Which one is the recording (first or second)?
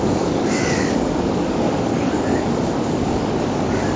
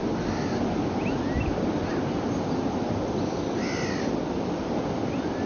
second